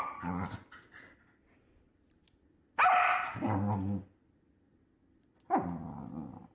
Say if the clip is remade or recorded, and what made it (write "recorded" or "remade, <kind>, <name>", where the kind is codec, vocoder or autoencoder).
recorded